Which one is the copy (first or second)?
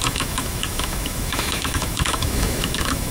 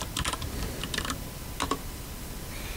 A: first